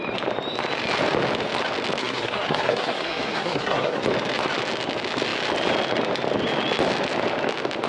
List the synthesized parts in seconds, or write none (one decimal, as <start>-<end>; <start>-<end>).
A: 2.0-4.0